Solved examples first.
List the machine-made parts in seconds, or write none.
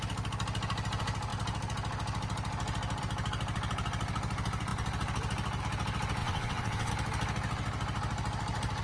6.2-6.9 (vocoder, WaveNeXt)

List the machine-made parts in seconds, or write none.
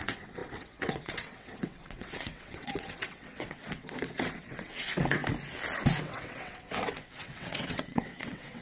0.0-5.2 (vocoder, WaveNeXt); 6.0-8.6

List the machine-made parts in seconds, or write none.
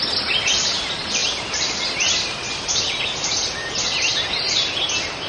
none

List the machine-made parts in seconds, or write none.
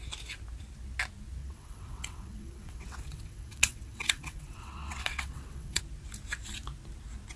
1.4-5.8 (vocoder, WaveNeXt)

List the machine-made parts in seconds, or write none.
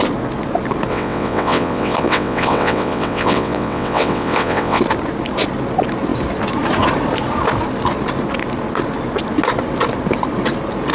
0.9-4.8 (vocoder, WaveNeXt)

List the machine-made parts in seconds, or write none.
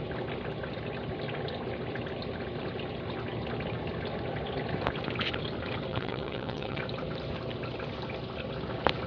5.9-6.8 (vocoder, WaveNeXt)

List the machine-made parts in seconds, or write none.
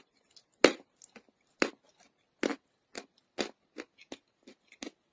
none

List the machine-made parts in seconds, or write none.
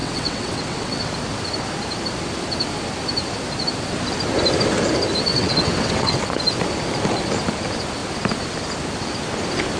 0.0-1.1 (vocoder, WaveNeXt); 5.3-6.2